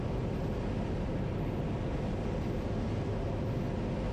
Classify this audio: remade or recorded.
recorded